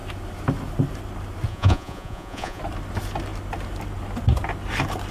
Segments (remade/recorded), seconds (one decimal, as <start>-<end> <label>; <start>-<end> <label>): 0.0-1.5 recorded; 1.5-2.6 remade; 2.6-5.1 recorded